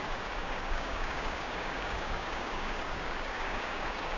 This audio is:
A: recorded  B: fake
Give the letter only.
B